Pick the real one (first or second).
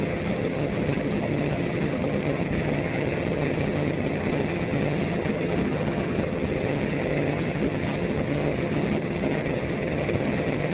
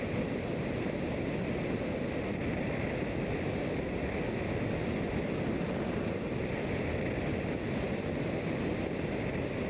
second